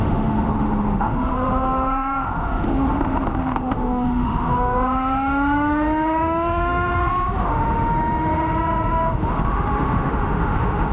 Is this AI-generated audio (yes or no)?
yes